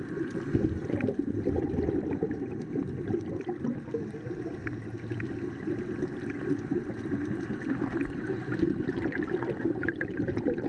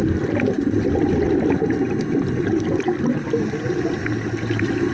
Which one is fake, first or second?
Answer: first